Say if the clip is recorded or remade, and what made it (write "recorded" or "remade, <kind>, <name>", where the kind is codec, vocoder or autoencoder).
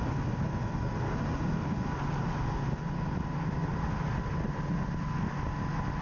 recorded